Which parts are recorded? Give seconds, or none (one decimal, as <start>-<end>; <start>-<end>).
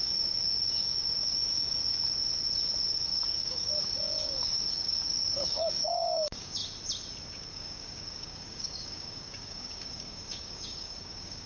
2.3-2.9; 6.6-7.5